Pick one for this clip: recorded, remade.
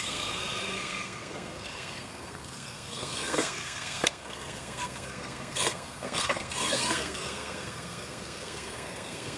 remade